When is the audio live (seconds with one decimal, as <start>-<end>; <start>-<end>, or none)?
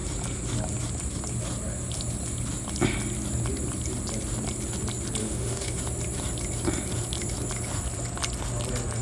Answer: 0.0-5.2; 5.8-9.0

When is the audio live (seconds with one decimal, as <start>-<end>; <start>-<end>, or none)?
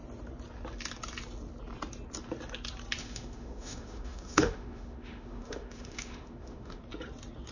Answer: 0.0-3.0; 6.8-7.5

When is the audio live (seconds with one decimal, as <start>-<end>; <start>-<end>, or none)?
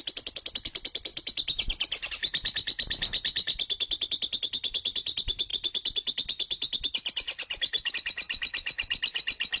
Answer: 0.0-9.6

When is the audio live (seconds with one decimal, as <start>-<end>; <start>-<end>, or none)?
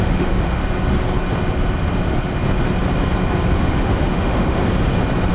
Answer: 0.6-3.6; 4.6-5.3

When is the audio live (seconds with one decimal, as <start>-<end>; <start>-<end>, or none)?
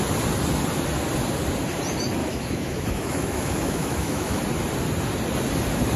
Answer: 0.0-2.2; 4.4-6.0